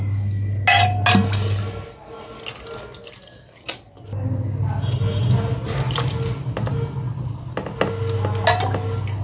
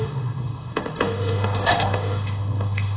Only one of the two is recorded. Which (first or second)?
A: first